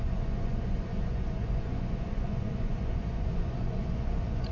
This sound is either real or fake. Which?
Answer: fake